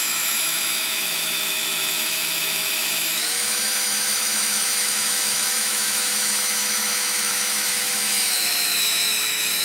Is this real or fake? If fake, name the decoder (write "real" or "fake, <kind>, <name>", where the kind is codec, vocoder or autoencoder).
fake, autoencoder, DAC-VAE